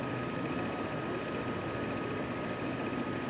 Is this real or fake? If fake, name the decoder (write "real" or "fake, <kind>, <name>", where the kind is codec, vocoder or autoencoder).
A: real